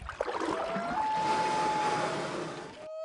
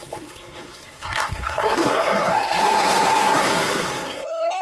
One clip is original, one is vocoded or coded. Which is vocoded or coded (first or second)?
second